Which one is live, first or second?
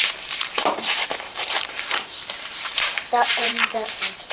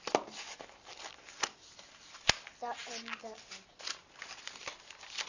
second